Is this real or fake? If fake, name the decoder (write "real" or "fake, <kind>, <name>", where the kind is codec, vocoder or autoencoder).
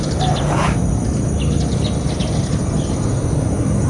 real